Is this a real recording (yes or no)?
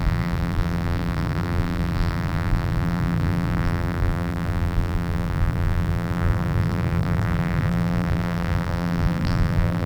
no